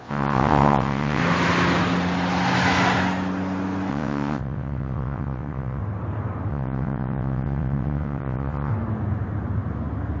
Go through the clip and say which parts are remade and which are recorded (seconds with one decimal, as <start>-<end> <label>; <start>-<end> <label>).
0.0-1.2 remade; 1.2-3.9 recorded; 3.9-5.8 remade; 5.8-6.5 recorded; 6.5-8.7 remade; 8.7-10.2 recorded

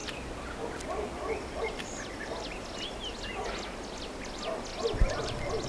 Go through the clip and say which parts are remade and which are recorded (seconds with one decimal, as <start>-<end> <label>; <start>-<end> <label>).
0.0-5.7 recorded

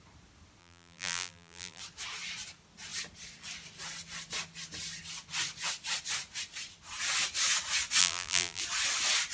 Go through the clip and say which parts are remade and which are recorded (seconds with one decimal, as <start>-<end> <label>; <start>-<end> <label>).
0.0-0.6 recorded; 0.6-1.8 remade; 1.8-8.0 recorded; 8.0-8.6 remade; 8.6-9.3 recorded

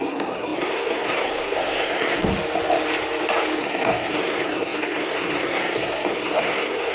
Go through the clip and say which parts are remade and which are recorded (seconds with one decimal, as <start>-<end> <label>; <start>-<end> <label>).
0.0-2.3 remade; 2.3-3.6 recorded; 3.6-6.9 remade